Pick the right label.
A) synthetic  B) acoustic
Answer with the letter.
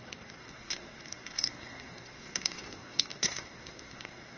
A